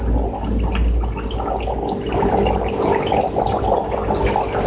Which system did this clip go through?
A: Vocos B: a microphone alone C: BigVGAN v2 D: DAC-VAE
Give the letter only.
B